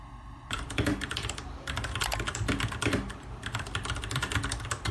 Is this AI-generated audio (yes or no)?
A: yes